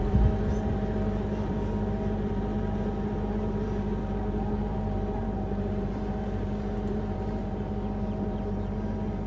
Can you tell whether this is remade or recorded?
remade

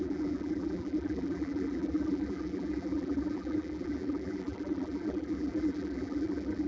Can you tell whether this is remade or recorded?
remade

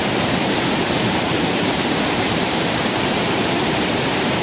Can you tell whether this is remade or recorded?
remade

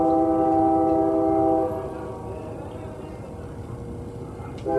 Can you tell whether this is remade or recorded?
recorded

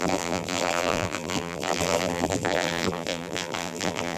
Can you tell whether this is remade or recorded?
remade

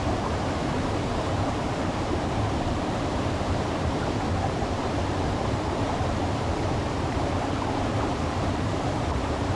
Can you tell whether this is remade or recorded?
remade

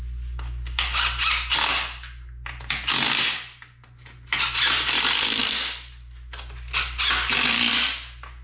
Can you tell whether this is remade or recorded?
recorded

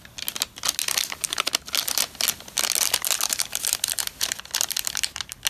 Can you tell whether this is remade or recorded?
recorded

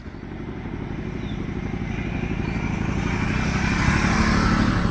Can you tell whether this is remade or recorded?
recorded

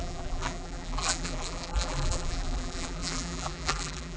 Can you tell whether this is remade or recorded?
remade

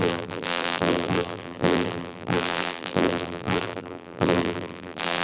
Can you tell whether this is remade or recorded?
remade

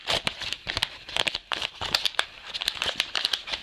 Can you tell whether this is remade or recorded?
remade